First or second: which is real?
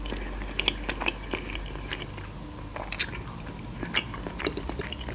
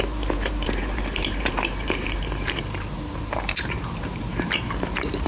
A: first